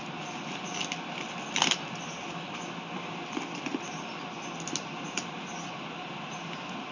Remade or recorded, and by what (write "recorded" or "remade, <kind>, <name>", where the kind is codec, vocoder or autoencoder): recorded